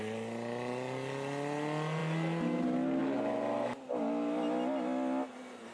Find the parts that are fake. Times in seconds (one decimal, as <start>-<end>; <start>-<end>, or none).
none